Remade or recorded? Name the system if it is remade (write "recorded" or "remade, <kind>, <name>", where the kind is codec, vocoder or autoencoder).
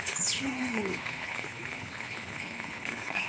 remade, codec, HILCodec